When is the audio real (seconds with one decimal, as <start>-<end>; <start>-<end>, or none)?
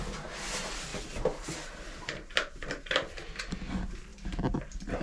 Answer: 0.0-0.9; 3.2-5.0